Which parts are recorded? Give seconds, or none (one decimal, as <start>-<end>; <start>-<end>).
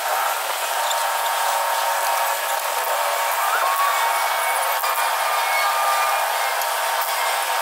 0.0-1.0; 1.9-7.6